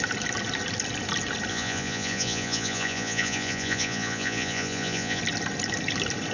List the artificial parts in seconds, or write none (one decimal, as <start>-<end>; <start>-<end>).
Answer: 1.5-5.2